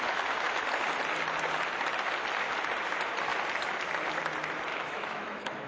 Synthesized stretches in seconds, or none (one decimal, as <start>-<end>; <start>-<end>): 4.7-5.7